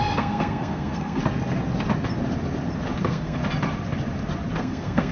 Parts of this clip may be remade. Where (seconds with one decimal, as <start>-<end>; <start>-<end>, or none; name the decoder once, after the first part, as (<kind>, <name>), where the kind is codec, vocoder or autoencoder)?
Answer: 0.0-1.2 (codec, SNAC); 3.0-3.4; 4.6-5.1